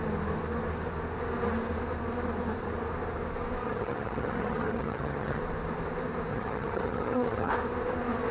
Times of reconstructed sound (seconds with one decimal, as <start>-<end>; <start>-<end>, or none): 3.6-5.4; 6.3-7.5